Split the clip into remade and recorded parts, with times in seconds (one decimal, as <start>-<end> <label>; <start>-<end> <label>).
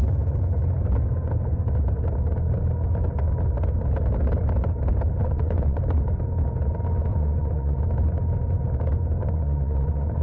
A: 0.0-5.2 recorded; 5.2-5.8 remade; 5.8-7.1 recorded; 7.1-7.8 remade; 7.8-9.2 recorded; 9.2-10.2 remade